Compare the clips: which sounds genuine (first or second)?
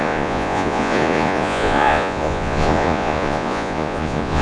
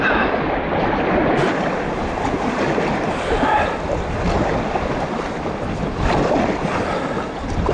second